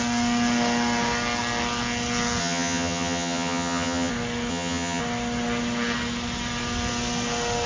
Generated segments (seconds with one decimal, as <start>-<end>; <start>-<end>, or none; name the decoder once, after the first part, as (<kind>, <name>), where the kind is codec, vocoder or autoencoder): 2.4-4.1 (vocoder, HiFi-GAN); 4.5-5.0